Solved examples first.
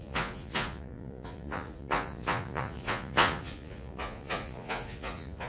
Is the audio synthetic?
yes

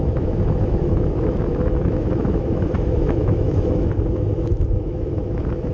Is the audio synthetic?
yes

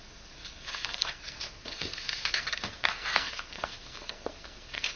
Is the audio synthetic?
yes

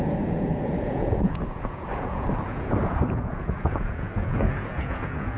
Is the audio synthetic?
yes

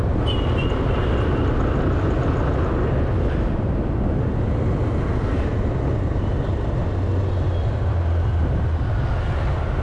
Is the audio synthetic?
no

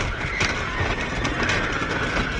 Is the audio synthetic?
no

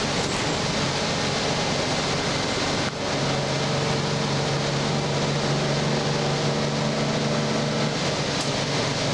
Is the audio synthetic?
no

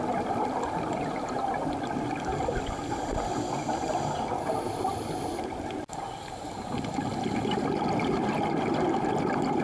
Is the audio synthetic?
no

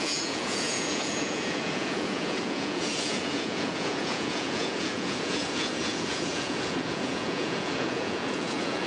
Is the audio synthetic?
yes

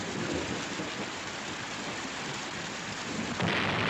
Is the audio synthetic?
no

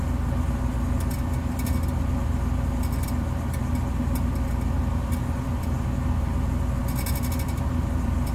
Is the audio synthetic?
no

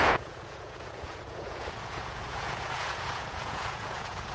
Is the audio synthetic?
yes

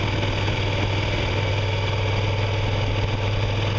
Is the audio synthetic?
no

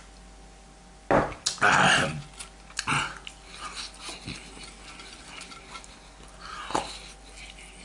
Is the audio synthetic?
no